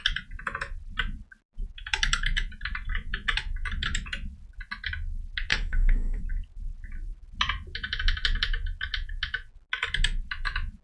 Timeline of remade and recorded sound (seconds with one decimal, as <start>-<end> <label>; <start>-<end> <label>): 0.0-5.5 recorded; 5.5-6.2 remade; 6.2-10.8 recorded